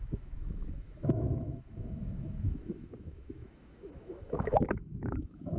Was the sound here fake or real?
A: fake